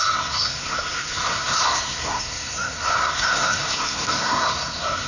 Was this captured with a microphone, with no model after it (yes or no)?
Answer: no